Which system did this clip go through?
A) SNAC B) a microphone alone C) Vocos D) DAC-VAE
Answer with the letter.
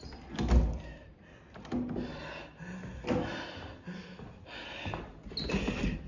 B